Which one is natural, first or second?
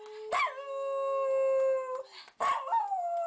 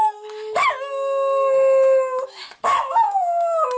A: first